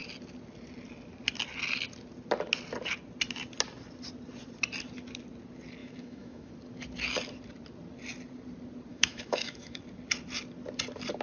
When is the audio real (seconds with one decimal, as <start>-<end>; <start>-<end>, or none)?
0.0-5.8; 6.5-8.9; 9.8-11.2